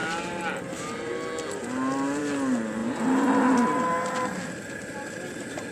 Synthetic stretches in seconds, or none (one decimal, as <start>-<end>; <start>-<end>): none

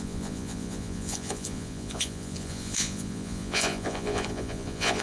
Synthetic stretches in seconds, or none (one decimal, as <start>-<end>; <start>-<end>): 0.0-5.0

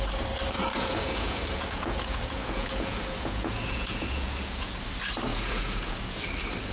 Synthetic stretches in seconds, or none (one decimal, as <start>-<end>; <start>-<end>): 0.7-4.7; 5.3-6.2